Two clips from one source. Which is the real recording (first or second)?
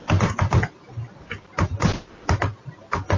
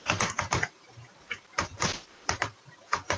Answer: first